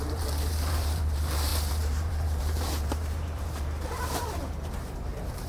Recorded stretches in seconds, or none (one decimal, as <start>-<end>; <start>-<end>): none